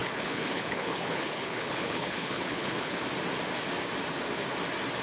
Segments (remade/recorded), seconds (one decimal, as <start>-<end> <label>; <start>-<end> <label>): 0.0-3.0 remade; 3.0-5.0 recorded